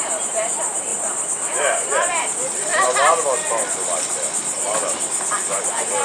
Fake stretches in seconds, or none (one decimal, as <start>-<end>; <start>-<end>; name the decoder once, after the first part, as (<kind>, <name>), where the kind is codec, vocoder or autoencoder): none